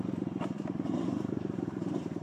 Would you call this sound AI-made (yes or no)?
yes